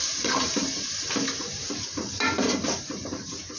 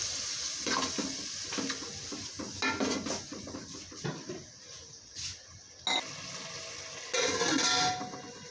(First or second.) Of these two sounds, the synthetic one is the first